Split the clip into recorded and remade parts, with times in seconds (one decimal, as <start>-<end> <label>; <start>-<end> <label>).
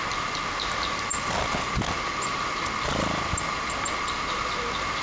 0.0-5.0 recorded